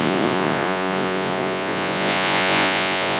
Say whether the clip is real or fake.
fake